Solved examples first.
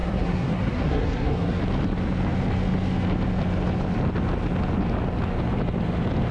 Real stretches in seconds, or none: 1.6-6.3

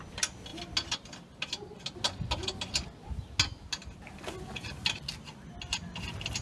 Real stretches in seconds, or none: 0.0-6.4